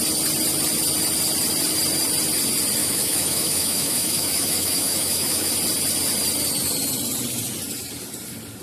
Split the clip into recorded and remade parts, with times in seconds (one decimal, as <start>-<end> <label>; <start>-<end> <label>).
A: 0.0-2.8 recorded; 2.8-5.5 remade; 5.5-8.6 recorded